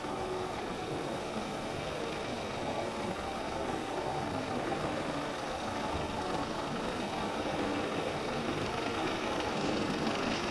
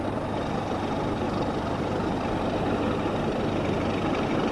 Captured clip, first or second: second